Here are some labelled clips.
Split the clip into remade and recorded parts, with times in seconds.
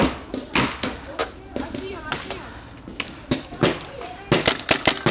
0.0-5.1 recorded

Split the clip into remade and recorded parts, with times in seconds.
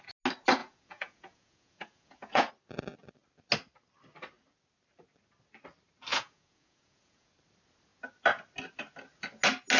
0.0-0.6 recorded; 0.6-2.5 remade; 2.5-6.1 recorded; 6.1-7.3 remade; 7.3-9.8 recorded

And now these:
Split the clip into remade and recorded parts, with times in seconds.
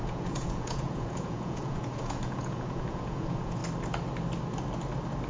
0.0-3.6 remade; 3.6-5.3 recorded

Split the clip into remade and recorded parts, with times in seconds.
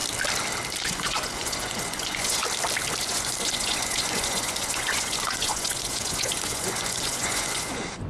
0.0-0.8 recorded; 0.8-2.4 remade; 2.4-3.0 recorded; 3.0-8.1 remade